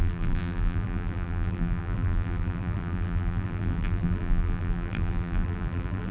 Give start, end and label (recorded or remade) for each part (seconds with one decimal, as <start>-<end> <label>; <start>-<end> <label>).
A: 0.0-6.1 remade